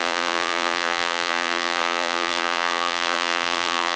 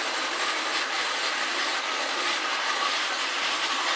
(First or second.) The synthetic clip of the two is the first